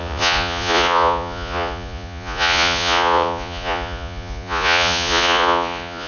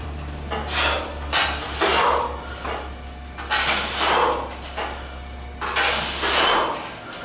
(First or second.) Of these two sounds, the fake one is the first